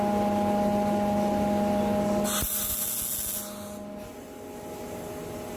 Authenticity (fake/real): real